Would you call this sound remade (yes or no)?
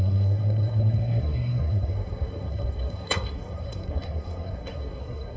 yes